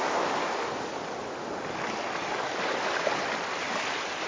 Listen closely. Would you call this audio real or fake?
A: real